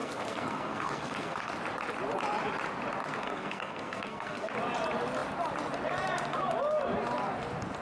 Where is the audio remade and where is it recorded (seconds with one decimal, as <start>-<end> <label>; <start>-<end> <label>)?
0.0-1.4 remade; 1.4-3.0 recorded; 3.0-4.5 remade; 4.5-7.8 recorded

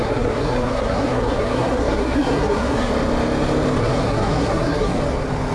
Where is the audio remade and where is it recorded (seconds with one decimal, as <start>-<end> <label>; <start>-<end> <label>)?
0.0-2.9 remade; 2.9-3.8 recorded; 3.8-5.0 remade; 5.0-5.5 recorded

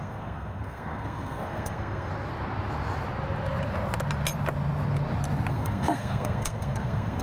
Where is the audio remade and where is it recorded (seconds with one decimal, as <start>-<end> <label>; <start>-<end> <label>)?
0.0-2.1 remade; 2.1-5.5 recorded; 5.5-7.2 remade

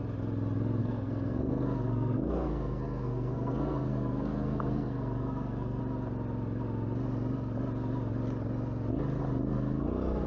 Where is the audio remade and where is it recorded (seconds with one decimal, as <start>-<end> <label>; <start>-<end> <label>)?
0.0-0.8 recorded; 0.8-5.8 remade; 5.8-10.3 recorded

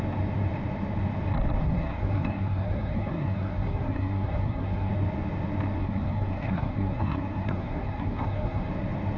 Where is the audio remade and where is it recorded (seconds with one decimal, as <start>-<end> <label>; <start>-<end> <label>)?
0.0-1.6 recorded; 1.6-4.9 remade; 4.9-5.8 recorded; 5.8-8.7 remade; 8.7-9.2 recorded

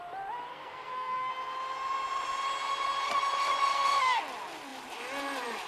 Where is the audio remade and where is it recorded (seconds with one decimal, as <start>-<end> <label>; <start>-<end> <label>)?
0.0-0.5 recorded; 0.5-1.3 remade; 1.3-3.7 recorded; 3.7-4.2 remade; 4.2-5.7 recorded

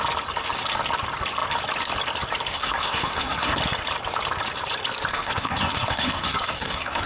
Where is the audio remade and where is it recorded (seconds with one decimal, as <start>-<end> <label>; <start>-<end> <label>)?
0.0-2.5 recorded; 2.5-3.6 remade; 3.6-5.1 recorded; 5.1-7.1 remade